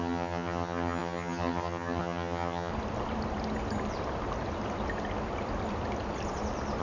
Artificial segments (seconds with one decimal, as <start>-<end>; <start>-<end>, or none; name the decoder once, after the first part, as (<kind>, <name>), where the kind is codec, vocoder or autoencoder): 0.0-2.7 (vocoder, HiFi-GAN)